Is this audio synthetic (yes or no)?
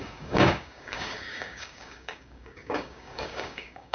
yes